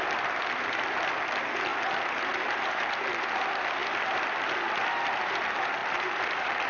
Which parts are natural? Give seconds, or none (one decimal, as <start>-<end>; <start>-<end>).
0.0-1.7; 2.9-5.8